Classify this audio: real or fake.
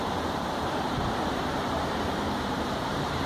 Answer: fake